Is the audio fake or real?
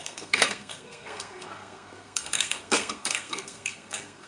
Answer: fake